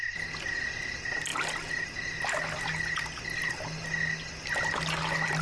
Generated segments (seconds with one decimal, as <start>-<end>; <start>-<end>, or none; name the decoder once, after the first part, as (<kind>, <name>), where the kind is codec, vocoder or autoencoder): none